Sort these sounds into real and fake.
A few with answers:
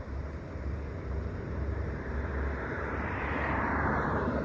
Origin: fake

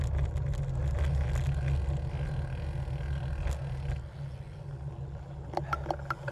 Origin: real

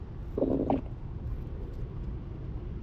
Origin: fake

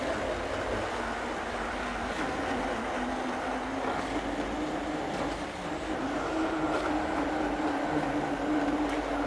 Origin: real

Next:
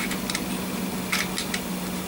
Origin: real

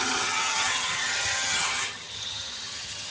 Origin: fake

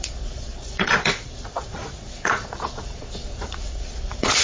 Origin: fake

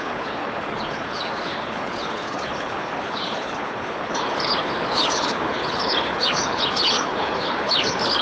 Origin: fake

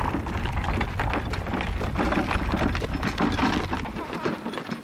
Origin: real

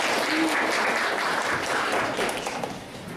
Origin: real